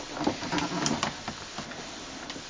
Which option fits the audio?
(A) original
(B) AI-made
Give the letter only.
A